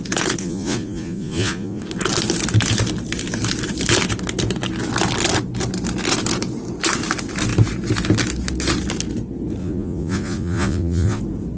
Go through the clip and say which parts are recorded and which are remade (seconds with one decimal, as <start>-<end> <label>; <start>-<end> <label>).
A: 0.0-0.4 recorded; 0.4-1.8 remade; 1.8-9.6 recorded; 9.6-11.2 remade; 11.2-11.6 recorded